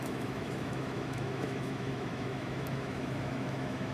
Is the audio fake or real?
fake